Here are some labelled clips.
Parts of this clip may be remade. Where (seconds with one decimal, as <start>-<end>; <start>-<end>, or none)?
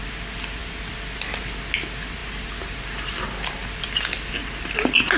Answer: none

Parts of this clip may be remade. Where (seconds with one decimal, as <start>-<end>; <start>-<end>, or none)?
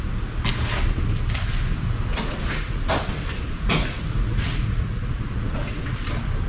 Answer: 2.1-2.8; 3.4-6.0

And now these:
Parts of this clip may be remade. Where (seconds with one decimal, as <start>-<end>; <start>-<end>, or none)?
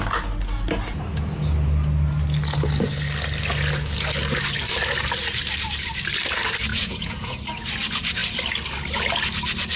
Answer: 6.7-7.4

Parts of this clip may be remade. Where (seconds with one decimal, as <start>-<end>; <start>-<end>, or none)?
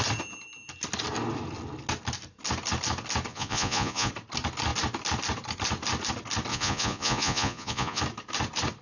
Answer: 3.3-4.1; 6.5-8.0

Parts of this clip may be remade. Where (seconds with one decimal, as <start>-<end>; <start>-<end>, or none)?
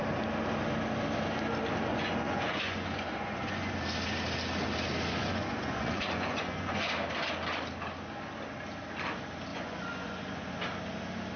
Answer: 1.9-3.8; 5.2-6.9; 9.5-10.5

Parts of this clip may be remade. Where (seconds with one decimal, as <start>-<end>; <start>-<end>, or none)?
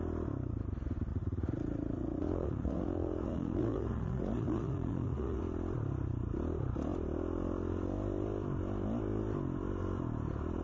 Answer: 1.1-5.4